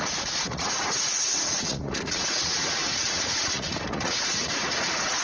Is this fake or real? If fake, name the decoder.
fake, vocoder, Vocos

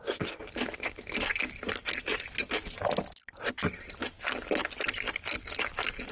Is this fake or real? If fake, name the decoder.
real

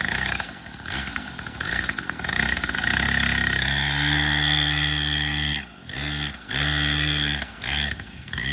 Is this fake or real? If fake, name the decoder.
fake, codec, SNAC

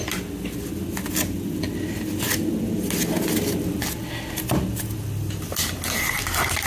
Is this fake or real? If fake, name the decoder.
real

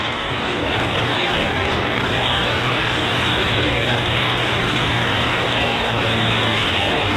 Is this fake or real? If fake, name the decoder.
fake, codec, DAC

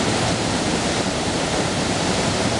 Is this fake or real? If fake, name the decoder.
fake, vocoder, BigVGAN v2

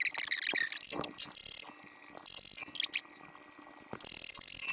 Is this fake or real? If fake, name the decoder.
real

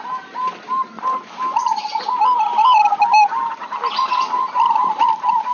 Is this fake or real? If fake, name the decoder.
real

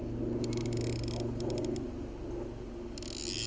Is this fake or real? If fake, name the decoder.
real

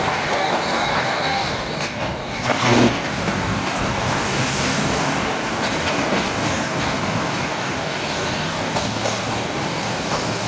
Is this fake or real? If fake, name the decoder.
fake, codec, DAC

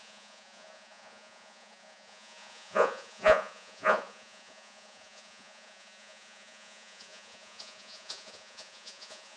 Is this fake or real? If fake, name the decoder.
fake, vocoder, Vocos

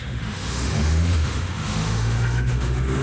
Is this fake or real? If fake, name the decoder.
fake, autoencoder, DAC-VAE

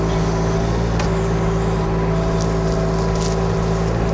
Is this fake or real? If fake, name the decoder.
real